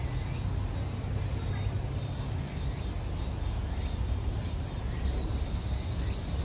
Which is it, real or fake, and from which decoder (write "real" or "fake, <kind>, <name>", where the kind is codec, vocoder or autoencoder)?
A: real